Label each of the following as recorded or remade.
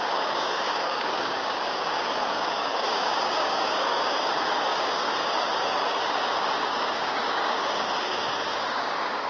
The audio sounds remade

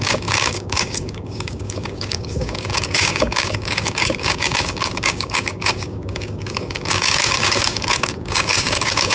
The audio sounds remade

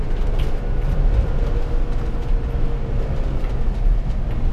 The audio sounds remade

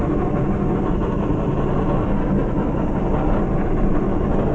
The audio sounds recorded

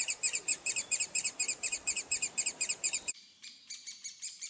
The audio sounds remade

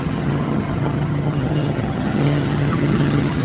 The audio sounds remade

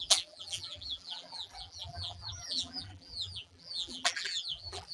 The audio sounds remade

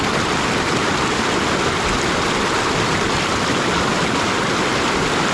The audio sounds recorded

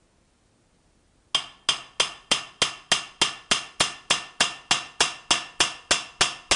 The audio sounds recorded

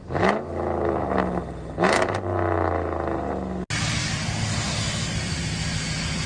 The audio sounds recorded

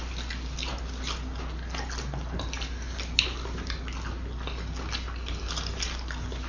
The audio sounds recorded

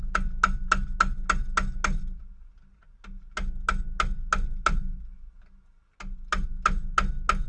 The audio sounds recorded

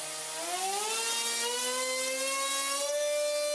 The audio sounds recorded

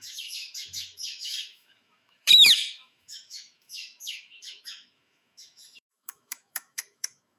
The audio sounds remade